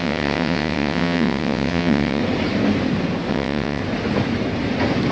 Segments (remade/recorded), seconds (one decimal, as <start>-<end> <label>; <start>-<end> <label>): 0.0-2.2 remade; 2.2-3.3 recorded; 3.3-3.8 remade; 3.8-5.1 recorded